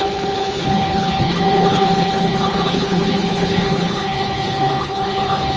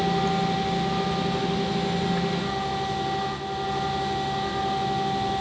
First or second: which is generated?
first